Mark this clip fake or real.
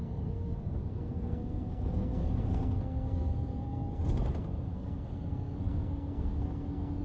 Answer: fake